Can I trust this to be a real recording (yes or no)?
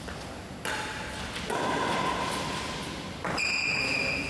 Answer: yes